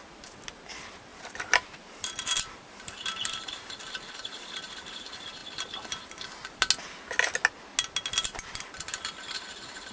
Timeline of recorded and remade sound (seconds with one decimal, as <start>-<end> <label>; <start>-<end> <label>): 0.0-1.1 recorded; 1.1-5.0 remade; 5.0-9.9 recorded